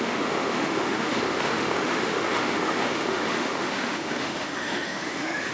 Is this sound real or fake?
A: fake